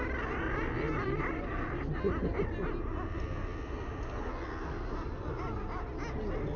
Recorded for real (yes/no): yes